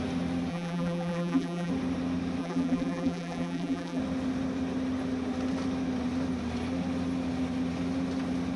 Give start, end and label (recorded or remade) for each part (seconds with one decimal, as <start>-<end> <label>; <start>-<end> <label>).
0.0-0.5 recorded; 0.5-1.7 remade; 1.7-2.4 recorded; 2.4-4.0 remade; 4.0-8.6 recorded

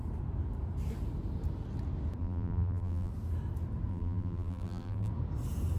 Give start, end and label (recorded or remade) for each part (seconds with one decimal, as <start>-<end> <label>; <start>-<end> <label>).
0.0-2.2 recorded; 2.2-3.1 remade; 3.1-3.9 recorded; 3.9-5.1 remade; 5.1-5.8 recorded

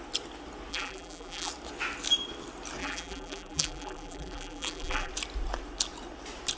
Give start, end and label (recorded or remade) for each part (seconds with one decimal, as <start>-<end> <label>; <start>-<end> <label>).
0.0-0.7 recorded; 0.7-1.5 remade; 1.5-2.8 recorded; 2.8-5.1 remade; 5.1-6.6 recorded

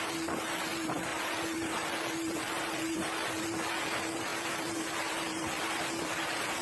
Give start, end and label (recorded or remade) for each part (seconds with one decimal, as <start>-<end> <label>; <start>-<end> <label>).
0.0-6.6 remade

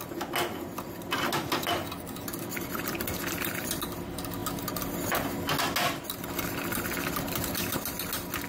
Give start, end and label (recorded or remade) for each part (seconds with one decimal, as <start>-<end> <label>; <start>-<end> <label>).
0.0-8.5 recorded

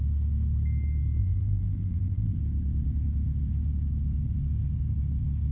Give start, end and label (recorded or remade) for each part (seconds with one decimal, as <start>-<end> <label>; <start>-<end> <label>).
0.0-1.2 recorded; 1.2-2.4 remade; 2.4-5.5 recorded

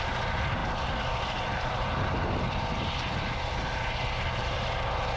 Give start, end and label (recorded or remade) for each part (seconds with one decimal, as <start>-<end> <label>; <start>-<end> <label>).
0.0-5.2 recorded

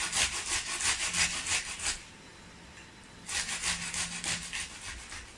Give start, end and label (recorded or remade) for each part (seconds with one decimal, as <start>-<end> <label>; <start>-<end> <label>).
0.0-5.4 recorded